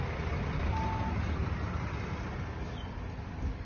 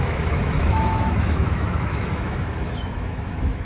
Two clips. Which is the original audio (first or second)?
first